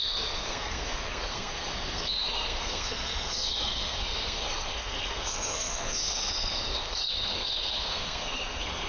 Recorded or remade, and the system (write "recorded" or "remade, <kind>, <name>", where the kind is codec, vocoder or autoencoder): remade, codec, SNAC